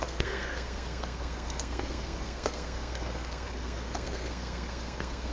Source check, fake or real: fake